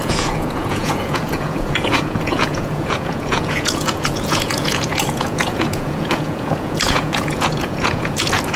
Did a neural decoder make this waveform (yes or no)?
yes